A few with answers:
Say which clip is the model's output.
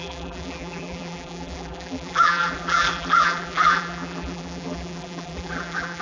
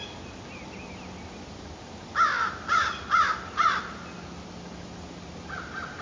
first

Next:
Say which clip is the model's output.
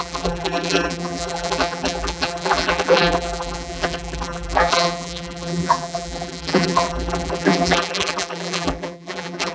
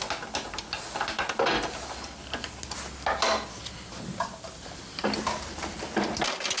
first